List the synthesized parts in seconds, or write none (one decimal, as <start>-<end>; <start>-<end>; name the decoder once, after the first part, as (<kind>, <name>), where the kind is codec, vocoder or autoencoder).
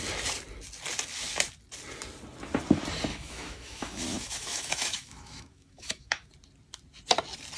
3.1-6.3 (autoencoder, DAC-VAE)